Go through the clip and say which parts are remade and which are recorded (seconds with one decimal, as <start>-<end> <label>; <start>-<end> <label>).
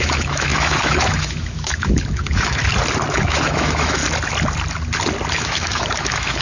0.0-2.6 remade; 2.6-3.1 recorded; 3.1-4.0 remade; 4.0-5.3 recorded; 5.3-6.4 remade